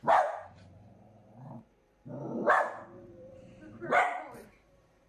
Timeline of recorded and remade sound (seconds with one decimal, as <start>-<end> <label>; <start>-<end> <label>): 0.0-5.1 remade